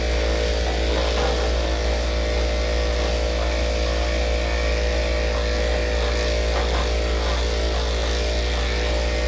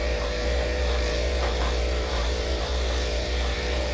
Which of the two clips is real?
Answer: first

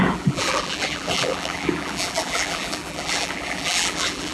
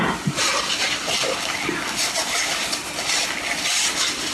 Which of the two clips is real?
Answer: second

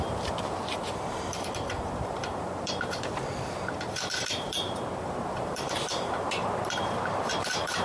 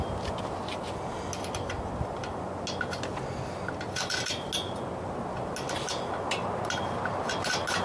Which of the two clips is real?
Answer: second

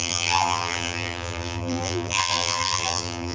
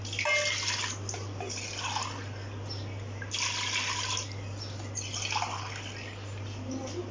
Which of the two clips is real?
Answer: second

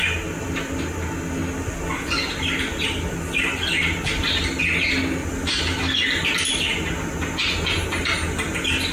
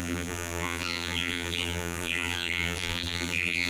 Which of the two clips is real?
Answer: first